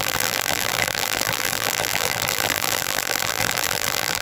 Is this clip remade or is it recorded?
remade